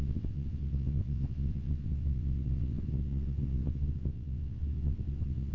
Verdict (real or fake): fake